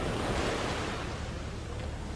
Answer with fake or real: real